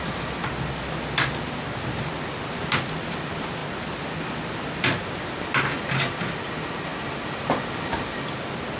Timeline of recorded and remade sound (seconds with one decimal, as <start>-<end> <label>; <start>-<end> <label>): 0.0-8.8 recorded

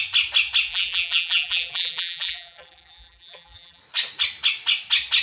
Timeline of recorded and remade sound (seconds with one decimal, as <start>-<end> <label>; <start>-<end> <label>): 0.0-0.7 recorded; 0.7-3.8 remade; 3.8-5.2 recorded

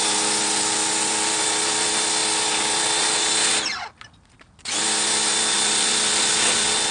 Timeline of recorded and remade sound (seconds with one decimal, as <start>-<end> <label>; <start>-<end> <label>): 0.0-6.9 recorded

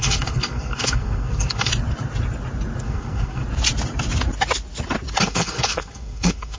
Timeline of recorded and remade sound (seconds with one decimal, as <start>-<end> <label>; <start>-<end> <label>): 0.0-1.7 remade; 1.7-2.8 recorded; 2.8-3.4 remade; 3.4-5.2 recorded; 5.2-6.6 remade

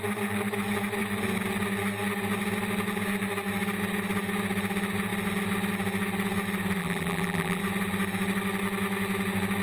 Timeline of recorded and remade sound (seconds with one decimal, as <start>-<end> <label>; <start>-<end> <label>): 0.0-6.8 recorded; 6.8-7.6 remade; 7.6-9.6 recorded

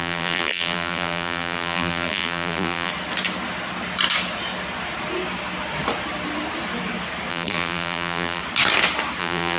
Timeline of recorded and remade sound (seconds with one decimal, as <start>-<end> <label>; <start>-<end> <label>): 0.0-2.9 remade; 2.9-7.3 recorded; 7.3-8.4 remade; 8.4-9.2 recorded; 9.2-9.6 remade